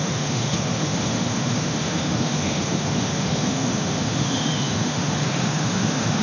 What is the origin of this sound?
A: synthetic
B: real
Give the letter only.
A